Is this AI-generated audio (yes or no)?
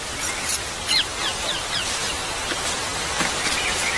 no